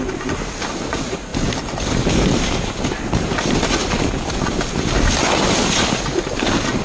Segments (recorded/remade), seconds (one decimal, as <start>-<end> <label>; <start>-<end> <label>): 0.0-6.8 recorded

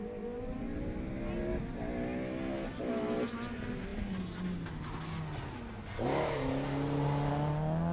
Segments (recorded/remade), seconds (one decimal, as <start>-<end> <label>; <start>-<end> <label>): 0.0-7.9 recorded

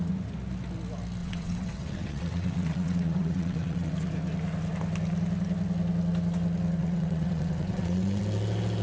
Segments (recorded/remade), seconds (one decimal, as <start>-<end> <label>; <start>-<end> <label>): 0.0-1.2 recorded; 1.2-3.9 remade; 3.9-6.8 recorded; 6.8-8.2 remade; 8.2-8.8 recorded

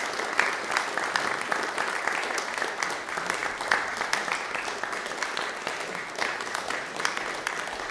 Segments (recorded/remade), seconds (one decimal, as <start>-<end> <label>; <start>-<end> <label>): 0.0-7.9 recorded

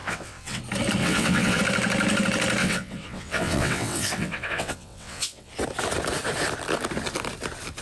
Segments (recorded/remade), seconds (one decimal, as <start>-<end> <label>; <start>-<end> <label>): 0.0-0.6 remade; 0.6-1.0 recorded; 1.0-1.6 remade; 1.6-2.6 recorded; 2.6-5.5 remade; 5.5-7.8 recorded

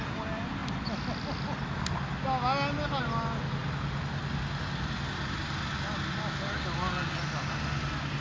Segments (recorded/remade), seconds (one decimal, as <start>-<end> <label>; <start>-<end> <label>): 0.0-8.2 recorded

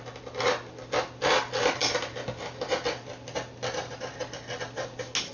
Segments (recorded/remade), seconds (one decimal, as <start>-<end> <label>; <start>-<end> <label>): 0.0-5.3 recorded